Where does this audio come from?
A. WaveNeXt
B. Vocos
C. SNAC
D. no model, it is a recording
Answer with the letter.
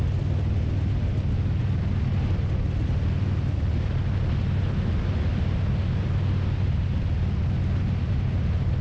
D